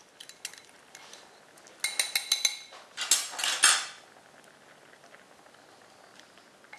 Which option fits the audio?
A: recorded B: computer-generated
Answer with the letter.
A